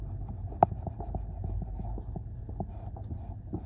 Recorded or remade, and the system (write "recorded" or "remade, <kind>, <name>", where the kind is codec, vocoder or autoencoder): recorded